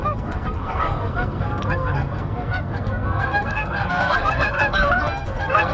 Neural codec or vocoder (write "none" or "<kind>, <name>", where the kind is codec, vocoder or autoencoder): codec, SNAC